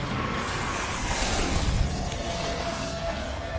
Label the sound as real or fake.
fake